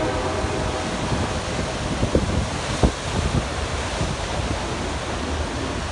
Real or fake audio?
real